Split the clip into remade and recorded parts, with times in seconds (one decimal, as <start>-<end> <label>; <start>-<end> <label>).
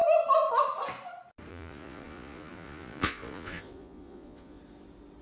0.0-1.5 recorded; 1.5-4.6 remade; 4.6-5.2 recorded